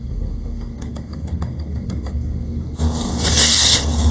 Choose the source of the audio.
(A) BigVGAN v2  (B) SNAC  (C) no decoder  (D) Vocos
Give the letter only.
B